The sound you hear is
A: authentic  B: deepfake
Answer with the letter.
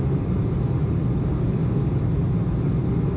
A